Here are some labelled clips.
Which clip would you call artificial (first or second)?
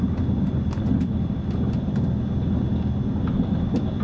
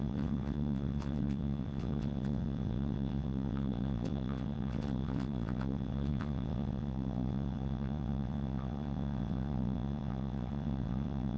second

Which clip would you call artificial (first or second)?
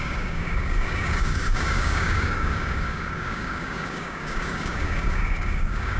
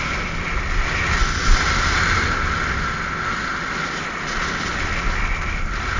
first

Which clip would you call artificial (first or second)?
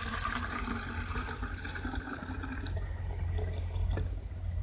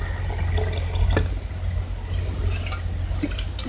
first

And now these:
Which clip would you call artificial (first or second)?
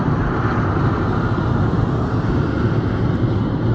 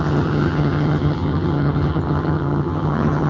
second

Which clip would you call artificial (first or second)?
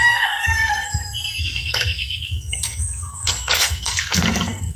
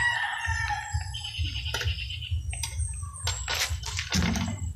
first